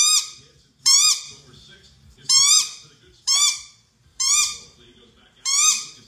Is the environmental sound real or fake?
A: fake